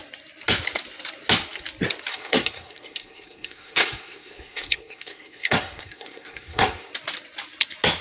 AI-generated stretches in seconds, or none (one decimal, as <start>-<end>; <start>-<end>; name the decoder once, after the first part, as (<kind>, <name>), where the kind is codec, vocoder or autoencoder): 2.1-6.9 (codec, SNAC)